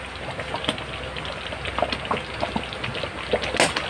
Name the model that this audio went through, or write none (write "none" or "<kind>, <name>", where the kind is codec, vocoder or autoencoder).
none